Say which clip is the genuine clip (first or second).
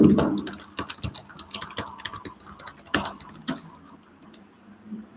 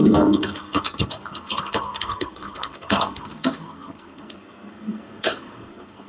first